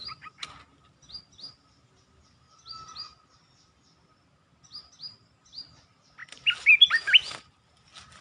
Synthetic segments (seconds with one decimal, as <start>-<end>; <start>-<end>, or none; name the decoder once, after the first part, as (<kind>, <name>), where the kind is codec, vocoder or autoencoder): none